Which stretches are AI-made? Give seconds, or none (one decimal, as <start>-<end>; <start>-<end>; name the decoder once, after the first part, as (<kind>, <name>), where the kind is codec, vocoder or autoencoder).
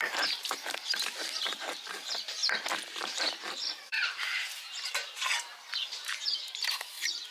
0.0-2.4 (vocoder, BigVGAN v2); 3.0-7.3